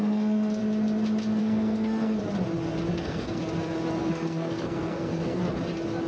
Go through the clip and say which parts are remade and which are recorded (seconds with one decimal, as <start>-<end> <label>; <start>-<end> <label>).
0.0-0.6 remade; 0.6-1.4 recorded; 1.4-2.2 remade; 2.2-2.9 recorded; 2.9-3.4 remade; 3.4-4.0 recorded; 4.0-5.4 remade; 5.4-6.1 recorded